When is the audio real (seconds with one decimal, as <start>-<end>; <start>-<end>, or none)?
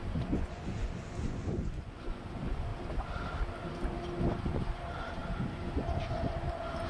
2.7-4.4